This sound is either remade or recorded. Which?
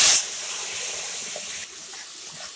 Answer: recorded